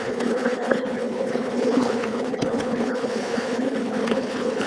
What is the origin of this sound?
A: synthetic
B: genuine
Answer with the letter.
A